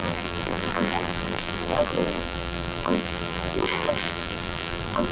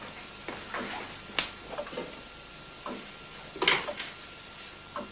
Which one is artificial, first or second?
first